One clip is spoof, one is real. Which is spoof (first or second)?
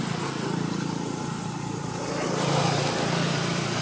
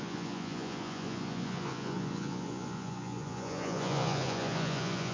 second